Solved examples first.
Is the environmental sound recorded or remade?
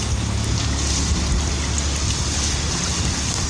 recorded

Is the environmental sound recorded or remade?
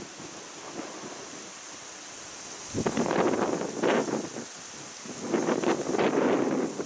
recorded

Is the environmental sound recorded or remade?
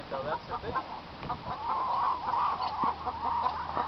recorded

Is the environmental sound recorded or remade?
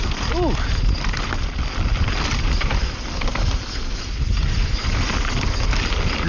recorded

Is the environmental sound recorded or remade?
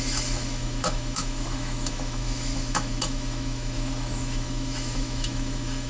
remade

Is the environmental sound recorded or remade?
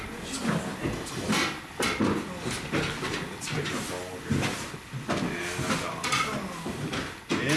recorded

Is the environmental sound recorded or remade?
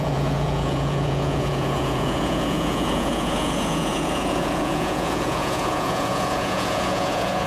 remade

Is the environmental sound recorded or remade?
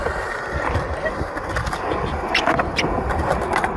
recorded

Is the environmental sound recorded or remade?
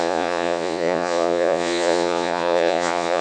remade